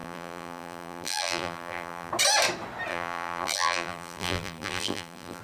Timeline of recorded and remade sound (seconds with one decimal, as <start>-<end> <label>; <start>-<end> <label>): 0.0-2.1 remade; 2.1-2.9 recorded; 2.9-5.4 remade